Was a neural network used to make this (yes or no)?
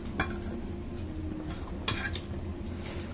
no